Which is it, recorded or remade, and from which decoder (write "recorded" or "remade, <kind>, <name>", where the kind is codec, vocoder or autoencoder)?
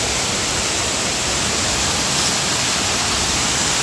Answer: recorded